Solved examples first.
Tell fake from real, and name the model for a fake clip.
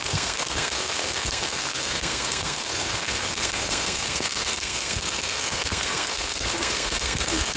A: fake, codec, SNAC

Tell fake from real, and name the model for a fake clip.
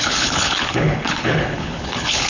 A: fake, codec, HILCodec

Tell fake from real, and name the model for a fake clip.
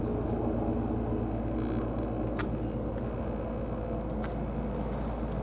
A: real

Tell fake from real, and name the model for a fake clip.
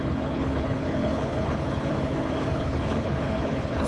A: fake, codec, HILCodec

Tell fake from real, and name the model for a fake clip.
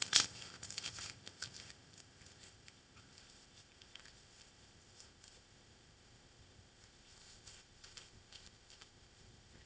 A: fake, codec, ZipCodec